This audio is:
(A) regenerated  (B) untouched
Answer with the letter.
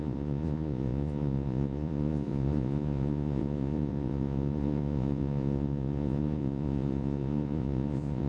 A